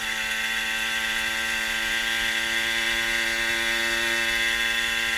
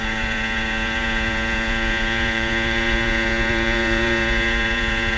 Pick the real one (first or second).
first